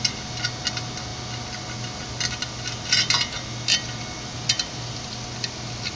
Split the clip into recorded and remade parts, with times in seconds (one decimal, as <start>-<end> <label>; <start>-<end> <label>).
0.0-6.0 recorded